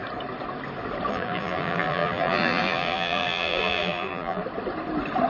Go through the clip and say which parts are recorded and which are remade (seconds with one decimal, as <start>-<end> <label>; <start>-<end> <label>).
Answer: 0.0-1.1 recorded; 1.1-4.4 remade; 4.4-5.3 recorded